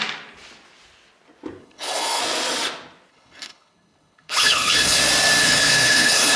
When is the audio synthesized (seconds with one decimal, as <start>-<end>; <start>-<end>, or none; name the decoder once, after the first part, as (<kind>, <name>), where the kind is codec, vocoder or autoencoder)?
1.6-2.2 (codec, HILCodec); 3.1-5.0; 5.4-6.4